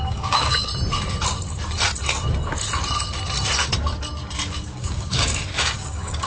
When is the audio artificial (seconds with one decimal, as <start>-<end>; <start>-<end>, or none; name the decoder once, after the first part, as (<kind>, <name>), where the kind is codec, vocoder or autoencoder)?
0.0-0.7 (codec, DAC); 4.5-6.3